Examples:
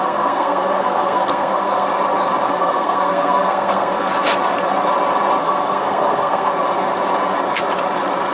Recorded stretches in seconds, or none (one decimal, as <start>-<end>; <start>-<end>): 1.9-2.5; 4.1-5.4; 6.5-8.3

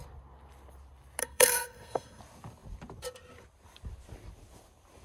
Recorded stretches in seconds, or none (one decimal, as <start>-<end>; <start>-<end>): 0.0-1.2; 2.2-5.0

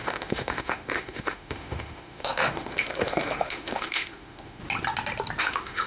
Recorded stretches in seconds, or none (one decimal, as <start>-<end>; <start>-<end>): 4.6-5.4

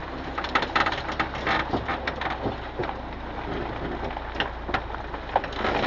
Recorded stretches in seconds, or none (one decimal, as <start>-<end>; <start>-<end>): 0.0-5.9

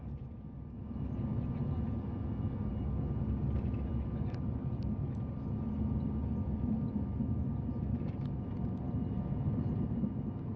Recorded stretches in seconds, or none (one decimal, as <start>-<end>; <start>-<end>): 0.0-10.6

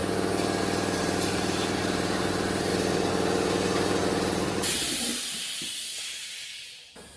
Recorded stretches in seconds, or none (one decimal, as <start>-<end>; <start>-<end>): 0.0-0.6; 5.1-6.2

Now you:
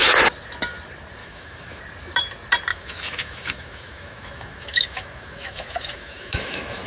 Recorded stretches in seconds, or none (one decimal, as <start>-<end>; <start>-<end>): 0.0-1.2; 1.8-2.7

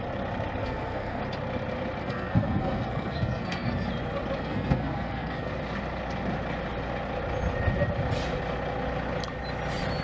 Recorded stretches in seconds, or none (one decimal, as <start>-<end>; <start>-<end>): 0.0-0.6; 1.2-2.0; 3.9-4.4; 5.5-10.0